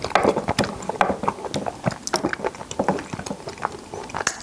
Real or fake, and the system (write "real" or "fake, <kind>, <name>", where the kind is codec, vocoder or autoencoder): real